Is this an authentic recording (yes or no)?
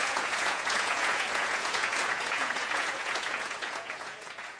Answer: no